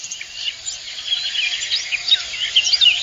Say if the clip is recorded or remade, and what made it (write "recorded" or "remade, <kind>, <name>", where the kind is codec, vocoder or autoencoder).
recorded